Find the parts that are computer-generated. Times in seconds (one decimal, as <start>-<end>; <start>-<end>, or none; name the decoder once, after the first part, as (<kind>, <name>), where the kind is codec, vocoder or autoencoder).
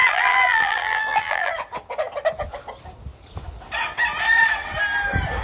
0.0-1.5 (vocoder, BigVGAN v2)